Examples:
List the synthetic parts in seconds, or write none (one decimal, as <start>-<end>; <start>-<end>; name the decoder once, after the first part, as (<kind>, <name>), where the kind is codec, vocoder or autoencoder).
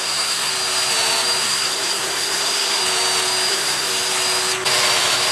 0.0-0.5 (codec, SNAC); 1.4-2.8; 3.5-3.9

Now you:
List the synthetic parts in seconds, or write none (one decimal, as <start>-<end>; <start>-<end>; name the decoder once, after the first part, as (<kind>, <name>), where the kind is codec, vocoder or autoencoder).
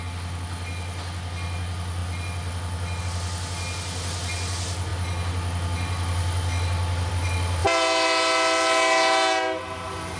none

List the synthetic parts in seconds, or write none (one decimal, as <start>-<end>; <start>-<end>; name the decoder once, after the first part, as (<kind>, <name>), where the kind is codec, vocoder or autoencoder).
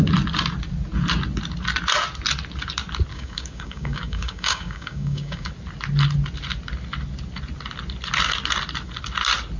3.1-5.5 (codec, DAC)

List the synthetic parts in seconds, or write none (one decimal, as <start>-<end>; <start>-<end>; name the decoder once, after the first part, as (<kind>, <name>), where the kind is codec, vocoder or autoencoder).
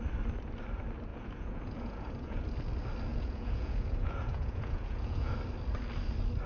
1.1-2.4 (vocoder, Vocos); 3.1-5.3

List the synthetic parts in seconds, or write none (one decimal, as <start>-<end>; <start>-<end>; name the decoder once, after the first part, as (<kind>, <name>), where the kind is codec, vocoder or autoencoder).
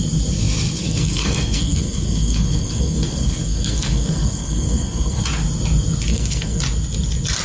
0.8-5.2 (codec, SNAC); 6.1-6.6